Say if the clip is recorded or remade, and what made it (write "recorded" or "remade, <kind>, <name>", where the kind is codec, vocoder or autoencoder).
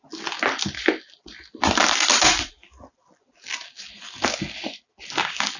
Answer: recorded